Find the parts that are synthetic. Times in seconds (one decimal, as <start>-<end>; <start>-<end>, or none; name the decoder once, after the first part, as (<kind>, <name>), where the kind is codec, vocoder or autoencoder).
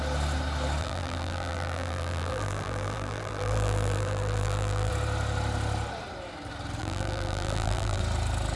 0.8-4.9 (vocoder, BigVGAN v2); 6.8-8.0